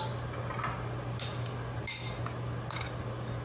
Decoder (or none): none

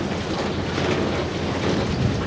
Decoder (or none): none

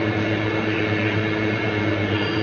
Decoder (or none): vocoder, Vocos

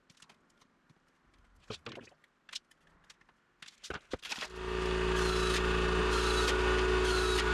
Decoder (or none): none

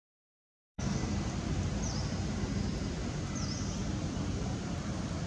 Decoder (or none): vocoder, BigVGAN v2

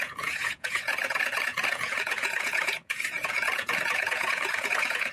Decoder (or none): vocoder, Vocos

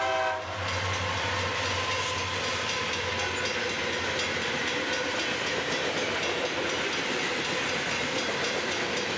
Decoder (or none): none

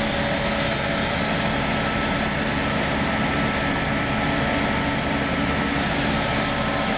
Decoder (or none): none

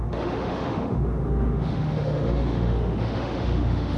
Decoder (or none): autoencoder, DAC-VAE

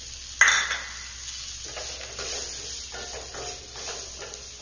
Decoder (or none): none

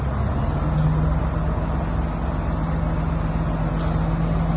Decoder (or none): none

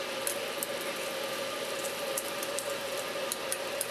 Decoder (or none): none